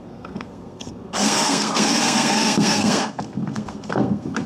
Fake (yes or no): yes